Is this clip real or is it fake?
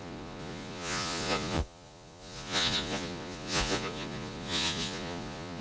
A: fake